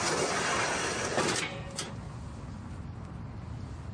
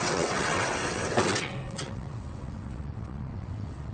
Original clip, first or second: first